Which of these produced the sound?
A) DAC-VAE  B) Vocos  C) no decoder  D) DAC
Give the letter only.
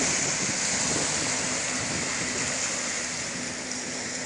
C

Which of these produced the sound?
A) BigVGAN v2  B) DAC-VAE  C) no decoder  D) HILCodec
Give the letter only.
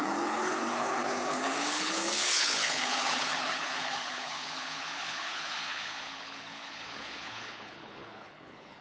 D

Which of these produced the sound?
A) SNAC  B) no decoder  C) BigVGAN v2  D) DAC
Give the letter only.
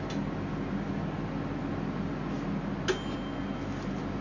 B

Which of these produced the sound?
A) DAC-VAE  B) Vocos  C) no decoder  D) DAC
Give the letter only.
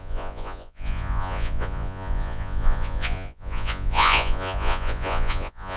B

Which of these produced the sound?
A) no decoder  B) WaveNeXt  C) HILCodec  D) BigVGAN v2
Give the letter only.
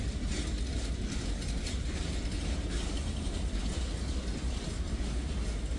A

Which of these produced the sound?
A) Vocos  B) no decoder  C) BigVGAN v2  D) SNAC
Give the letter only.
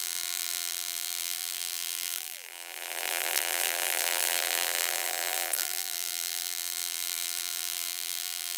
C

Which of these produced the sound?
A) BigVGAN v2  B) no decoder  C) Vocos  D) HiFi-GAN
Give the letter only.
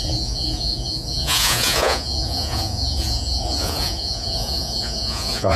C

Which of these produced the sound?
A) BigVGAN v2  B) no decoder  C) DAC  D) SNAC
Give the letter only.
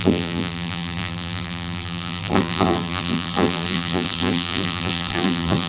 A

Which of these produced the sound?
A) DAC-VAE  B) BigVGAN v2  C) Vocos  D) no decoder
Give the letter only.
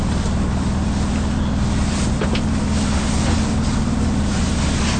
D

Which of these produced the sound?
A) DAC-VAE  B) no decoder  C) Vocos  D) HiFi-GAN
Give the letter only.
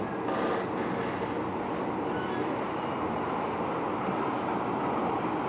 B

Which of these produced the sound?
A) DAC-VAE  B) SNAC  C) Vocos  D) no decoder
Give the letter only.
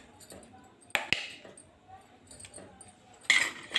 D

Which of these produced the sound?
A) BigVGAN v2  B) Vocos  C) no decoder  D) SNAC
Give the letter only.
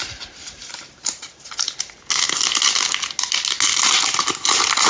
C